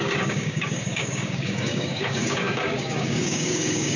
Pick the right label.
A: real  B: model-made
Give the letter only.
B